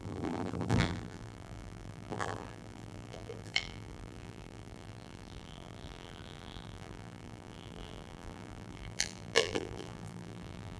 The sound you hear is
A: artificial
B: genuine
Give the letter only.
A